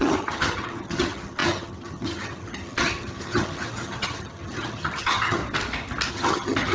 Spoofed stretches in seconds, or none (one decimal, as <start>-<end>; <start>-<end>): 0.0-5.4; 6.1-6.7